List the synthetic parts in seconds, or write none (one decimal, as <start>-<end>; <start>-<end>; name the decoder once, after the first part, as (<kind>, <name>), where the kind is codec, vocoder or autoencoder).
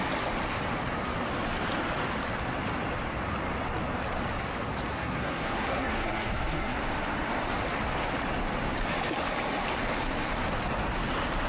4.9-6.8 (codec, SNAC)